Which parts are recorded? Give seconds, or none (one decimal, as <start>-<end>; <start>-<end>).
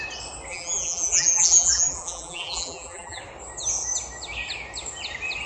0.0-0.5; 3.2-5.5